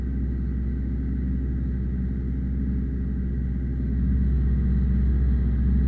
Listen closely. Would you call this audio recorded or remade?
recorded